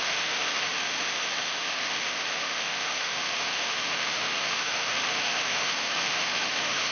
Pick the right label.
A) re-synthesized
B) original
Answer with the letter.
A